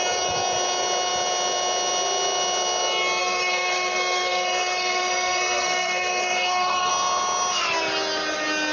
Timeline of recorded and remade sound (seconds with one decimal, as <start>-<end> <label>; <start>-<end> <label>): 0.0-3.2 recorded; 3.2-6.9 remade; 6.9-8.7 recorded